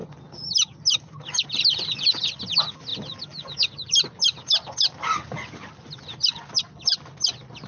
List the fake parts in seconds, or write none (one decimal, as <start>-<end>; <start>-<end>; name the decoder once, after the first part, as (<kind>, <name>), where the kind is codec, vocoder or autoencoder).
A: none